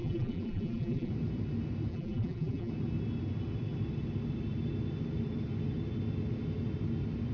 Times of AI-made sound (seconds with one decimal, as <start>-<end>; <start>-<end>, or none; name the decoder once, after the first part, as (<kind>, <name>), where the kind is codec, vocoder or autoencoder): 0.0-1.1 (vocoder, BigVGAN v2); 1.9-2.7